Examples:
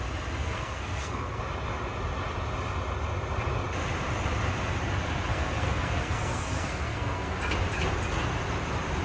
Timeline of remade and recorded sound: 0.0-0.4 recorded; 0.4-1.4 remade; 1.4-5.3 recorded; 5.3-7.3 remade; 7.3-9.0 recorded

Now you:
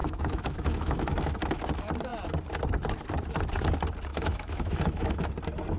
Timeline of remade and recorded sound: 0.0-1.4 remade; 1.4-4.1 recorded; 4.1-5.3 remade; 5.3-5.8 recorded

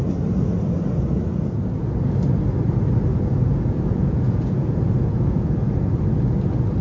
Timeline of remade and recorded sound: 0.0-3.1 recorded; 3.1-5.7 remade; 5.7-6.8 recorded

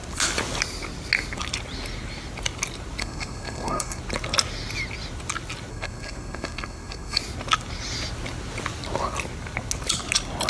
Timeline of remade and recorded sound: 0.0-3.0 recorded; 3.0-4.0 remade; 4.0-5.7 recorded; 5.7-7.2 remade; 7.2-10.5 recorded